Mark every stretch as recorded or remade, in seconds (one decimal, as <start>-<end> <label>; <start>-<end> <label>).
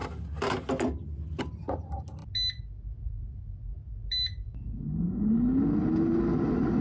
0.0-6.8 recorded